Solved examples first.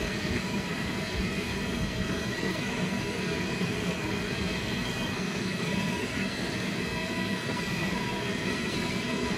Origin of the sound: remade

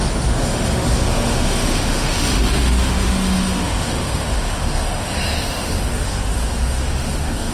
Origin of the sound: remade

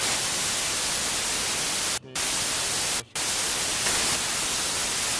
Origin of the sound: recorded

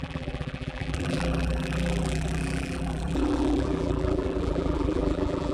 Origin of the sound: remade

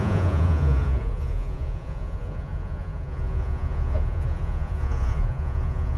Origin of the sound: remade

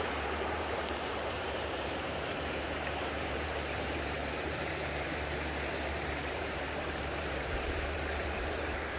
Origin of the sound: remade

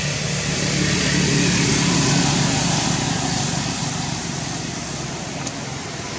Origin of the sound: recorded